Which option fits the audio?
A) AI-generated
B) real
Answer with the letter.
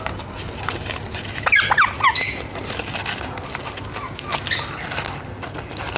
B